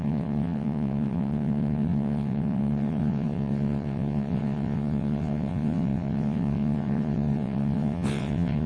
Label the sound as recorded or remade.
remade